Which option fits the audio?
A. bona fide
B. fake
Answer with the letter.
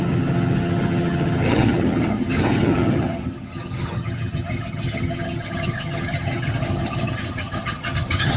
B